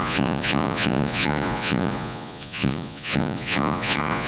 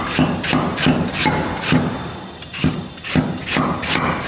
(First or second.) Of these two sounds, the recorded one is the second